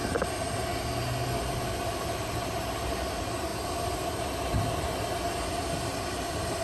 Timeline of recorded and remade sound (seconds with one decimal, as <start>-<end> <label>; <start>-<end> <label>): 0.0-1.5 recorded; 1.5-3.5 remade; 3.5-5.8 recorded; 5.8-6.6 remade

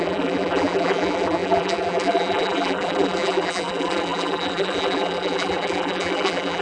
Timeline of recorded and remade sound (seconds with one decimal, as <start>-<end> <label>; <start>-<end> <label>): 0.0-6.6 remade

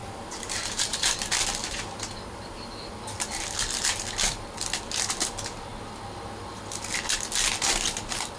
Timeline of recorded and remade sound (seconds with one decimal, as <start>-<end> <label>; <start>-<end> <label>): 0.0-1.1 remade; 1.1-1.6 recorded; 1.6-2.9 remade; 2.9-8.4 recorded

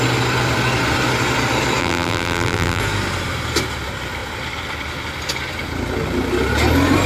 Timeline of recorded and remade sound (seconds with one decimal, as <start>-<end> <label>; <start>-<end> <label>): 0.0-1.8 recorded; 1.8-2.8 remade; 2.8-7.1 recorded

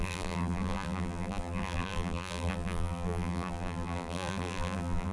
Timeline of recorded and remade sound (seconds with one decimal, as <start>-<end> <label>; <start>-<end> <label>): 0.0-5.1 remade

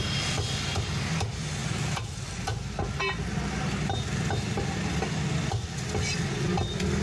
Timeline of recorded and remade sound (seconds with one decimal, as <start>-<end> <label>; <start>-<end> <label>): 0.0-1.6 recorded; 1.6-3.1 remade; 3.1-7.0 recorded

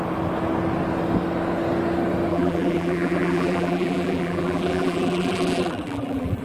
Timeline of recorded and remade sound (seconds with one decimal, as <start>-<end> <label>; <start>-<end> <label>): 0.0-2.3 recorded; 2.3-6.4 remade